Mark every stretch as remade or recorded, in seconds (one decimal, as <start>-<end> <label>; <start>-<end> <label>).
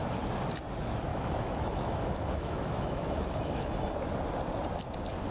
0.0-1.1 recorded; 1.1-3.7 remade; 3.7-5.3 recorded